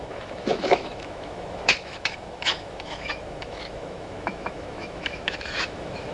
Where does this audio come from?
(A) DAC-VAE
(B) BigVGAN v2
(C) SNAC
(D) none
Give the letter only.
A